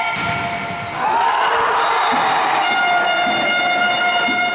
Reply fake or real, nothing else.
real